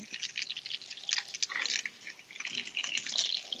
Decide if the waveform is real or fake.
real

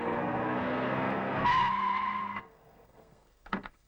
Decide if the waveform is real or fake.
fake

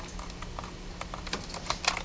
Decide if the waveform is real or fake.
real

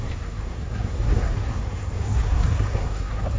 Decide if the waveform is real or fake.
fake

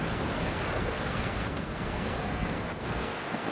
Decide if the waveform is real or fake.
fake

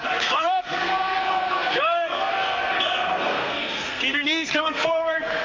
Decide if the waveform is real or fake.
fake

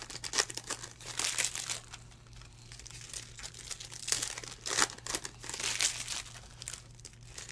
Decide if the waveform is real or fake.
real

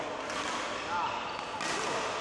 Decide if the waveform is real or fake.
real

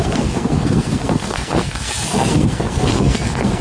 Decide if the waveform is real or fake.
fake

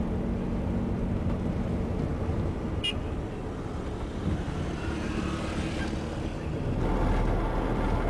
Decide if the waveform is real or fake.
real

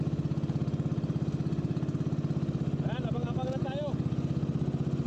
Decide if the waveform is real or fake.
real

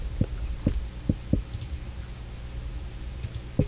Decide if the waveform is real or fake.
real